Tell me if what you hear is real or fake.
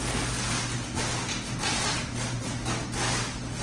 real